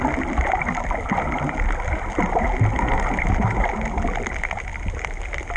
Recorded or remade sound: recorded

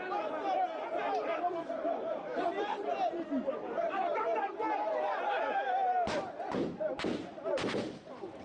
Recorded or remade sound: recorded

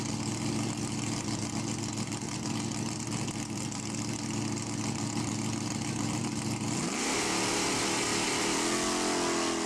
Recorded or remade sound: recorded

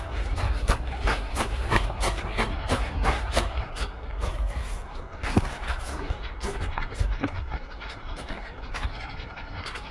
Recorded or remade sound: remade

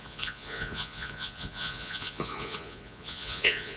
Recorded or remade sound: remade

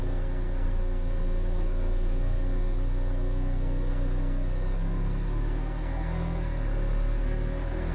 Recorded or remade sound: remade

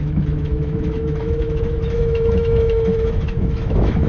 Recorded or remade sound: remade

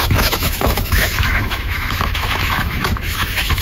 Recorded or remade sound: remade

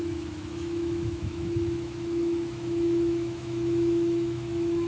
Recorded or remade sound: remade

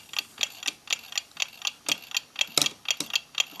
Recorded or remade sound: recorded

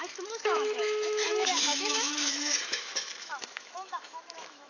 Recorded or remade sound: remade